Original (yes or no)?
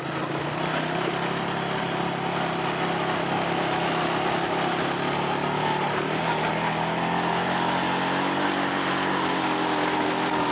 yes